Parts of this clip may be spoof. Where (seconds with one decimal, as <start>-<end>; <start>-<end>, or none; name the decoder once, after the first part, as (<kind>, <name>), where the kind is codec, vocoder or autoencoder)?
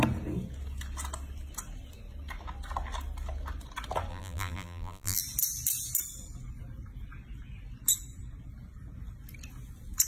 4.1-5.2 (vocoder, BigVGAN v2)